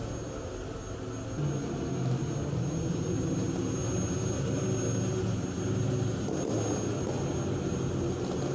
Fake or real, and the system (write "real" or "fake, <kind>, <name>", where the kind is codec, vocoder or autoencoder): real